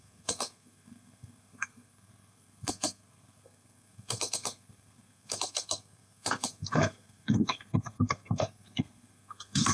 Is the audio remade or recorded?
remade